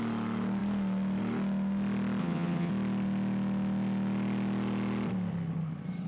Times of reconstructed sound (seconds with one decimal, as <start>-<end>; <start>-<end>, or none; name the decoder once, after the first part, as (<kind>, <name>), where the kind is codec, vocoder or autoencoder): 2.2-2.7 (vocoder, HiFi-GAN)